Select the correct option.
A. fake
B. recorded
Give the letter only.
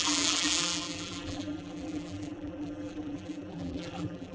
A